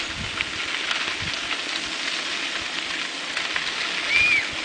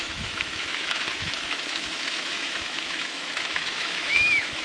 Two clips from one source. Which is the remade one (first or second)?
second